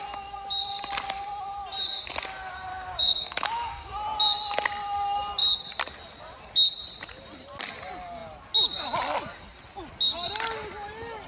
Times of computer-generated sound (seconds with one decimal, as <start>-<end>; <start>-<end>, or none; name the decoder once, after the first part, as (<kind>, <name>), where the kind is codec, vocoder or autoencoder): 2.7-4.0 (codec, DAC)